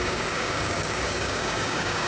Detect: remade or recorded remade